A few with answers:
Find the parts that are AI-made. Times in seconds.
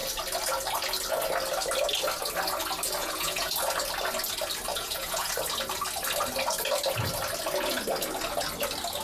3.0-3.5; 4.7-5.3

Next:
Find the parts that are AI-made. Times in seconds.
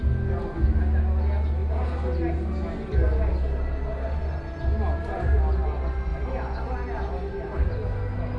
none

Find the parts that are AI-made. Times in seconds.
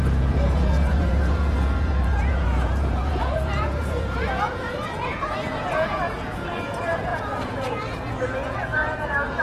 0.0-9.4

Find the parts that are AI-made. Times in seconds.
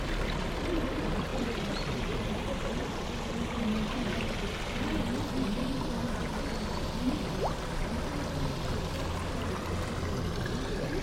none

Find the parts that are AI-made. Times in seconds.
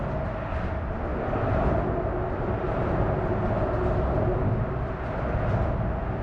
none